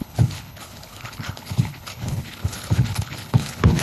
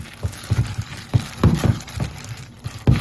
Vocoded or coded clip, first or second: first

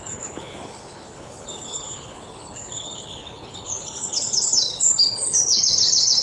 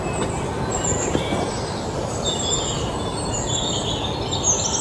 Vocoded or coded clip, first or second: first